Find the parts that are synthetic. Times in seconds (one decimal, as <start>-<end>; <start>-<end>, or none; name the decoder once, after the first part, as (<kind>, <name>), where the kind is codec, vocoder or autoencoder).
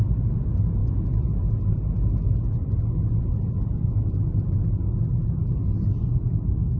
none